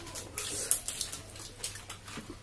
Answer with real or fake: real